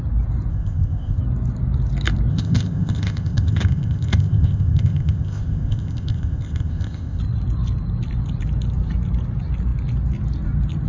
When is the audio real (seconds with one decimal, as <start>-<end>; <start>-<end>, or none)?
0.0-0.5; 1.2-2.3; 7.2-10.9